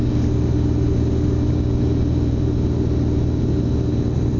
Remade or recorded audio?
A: recorded